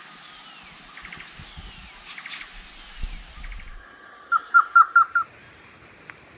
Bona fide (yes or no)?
yes